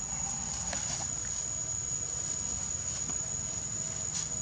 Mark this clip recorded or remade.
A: recorded